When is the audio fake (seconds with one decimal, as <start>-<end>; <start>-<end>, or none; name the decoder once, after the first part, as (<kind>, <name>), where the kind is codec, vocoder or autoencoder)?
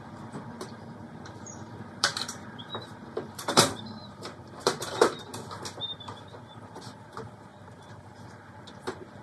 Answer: 0.0-5.3 (vocoder, BigVGAN v2); 6.3-9.2